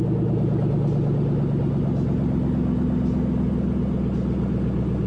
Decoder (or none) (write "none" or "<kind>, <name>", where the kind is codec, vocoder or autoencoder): none